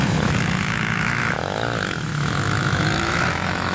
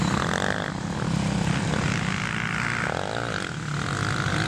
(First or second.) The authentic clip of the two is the second